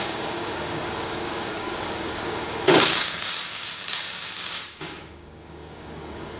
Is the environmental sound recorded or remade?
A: remade